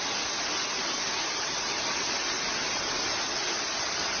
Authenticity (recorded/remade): recorded